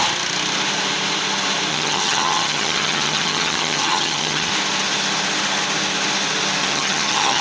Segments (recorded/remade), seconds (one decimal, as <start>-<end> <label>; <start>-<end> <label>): 0.0-1.7 recorded; 1.7-4.5 remade; 4.5-6.6 recorded; 6.6-7.4 remade

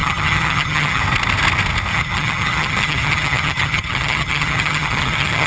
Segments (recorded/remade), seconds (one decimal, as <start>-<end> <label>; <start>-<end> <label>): 0.0-1.0 remade; 1.0-1.9 recorded; 1.9-5.5 remade

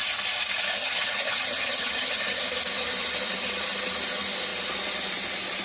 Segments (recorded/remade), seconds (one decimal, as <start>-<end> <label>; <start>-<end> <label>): 0.0-0.8 recorded; 0.8-2.4 remade; 2.4-5.6 recorded

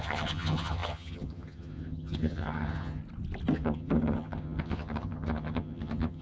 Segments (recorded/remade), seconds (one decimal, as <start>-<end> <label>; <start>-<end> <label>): 0.0-3.0 remade; 3.0-3.5 recorded; 3.5-6.2 remade

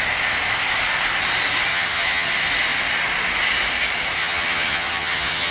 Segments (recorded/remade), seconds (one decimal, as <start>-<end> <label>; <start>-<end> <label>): 0.0-1.7 recorded; 1.7-2.3 remade; 2.3-4.2 recorded; 4.2-5.5 remade

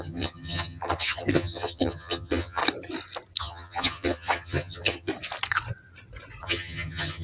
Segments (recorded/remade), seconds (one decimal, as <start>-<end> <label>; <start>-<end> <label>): 0.0-2.6 remade; 2.6-3.4 recorded; 3.4-5.1 remade; 5.1-6.4 recorded; 6.4-7.2 remade

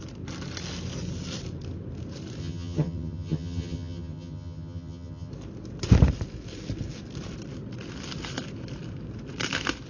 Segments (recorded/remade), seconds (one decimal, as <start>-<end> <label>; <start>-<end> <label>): 0.0-2.4 recorded; 2.4-5.3 remade; 5.3-9.9 recorded

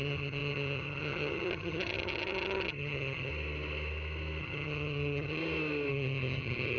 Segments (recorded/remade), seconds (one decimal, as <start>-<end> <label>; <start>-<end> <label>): 0.0-3.3 remade; 3.3-4.4 recorded; 4.4-5.4 remade; 5.4-5.9 recorded; 5.9-6.8 remade